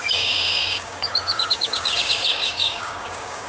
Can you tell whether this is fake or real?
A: fake